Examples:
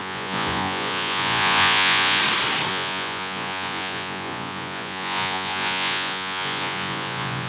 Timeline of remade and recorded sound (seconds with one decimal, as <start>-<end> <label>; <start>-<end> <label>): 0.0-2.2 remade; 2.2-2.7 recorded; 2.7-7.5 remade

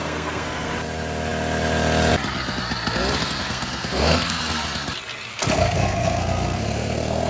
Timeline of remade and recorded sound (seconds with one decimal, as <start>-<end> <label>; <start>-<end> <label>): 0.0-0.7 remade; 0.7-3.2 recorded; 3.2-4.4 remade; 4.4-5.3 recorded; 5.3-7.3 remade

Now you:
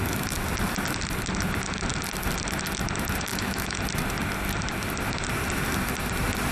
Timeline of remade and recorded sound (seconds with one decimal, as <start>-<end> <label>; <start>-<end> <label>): 0.0-3.3 recorded; 3.3-3.8 remade; 3.8-6.5 recorded

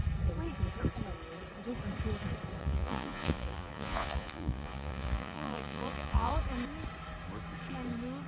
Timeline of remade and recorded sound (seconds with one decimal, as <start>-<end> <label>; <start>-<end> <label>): 0.0-2.6 recorded; 2.6-6.3 remade; 6.3-8.3 recorded

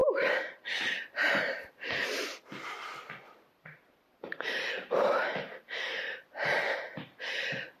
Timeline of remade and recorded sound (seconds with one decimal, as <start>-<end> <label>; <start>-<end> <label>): 0.0-1.7 remade; 1.7-7.8 recorded

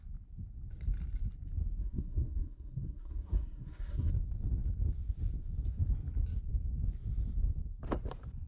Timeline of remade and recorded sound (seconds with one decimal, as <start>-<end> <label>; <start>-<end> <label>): 0.0-1.8 recorded; 1.8-4.1 remade; 4.1-8.5 recorded

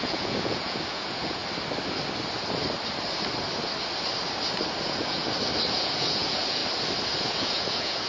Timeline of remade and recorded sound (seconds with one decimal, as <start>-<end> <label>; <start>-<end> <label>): 0.0-1.4 remade; 1.4-4.8 recorded; 4.8-5.2 remade; 5.2-5.7 recorded; 5.7-6.6 remade; 6.6-7.3 recorded; 7.3-8.1 remade